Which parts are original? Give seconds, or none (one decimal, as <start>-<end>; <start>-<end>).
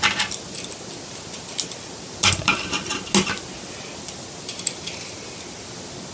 0.0-6.1